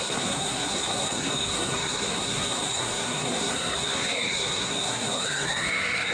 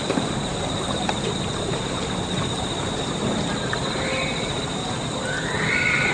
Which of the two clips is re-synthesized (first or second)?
first